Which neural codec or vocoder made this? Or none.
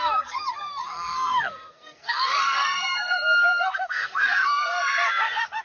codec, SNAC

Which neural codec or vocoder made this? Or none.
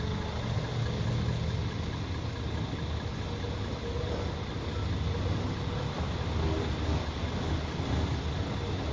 none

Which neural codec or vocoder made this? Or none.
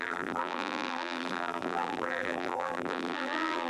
vocoder, BigVGAN v2